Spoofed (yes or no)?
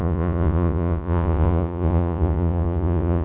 yes